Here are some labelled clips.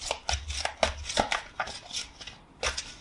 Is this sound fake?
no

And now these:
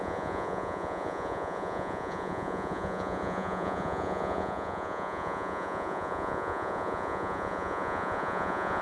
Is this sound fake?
yes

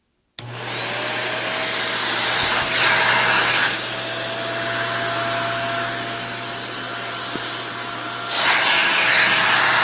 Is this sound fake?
no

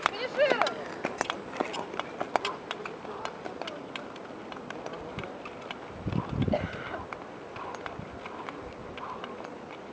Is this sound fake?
no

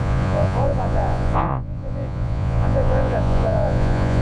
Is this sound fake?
yes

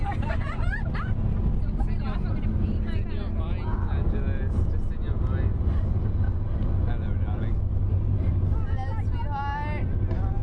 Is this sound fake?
no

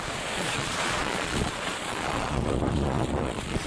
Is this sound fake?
yes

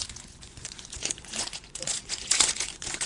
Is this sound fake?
yes